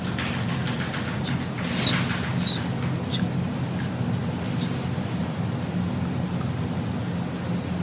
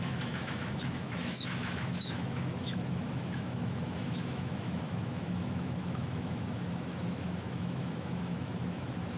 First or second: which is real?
first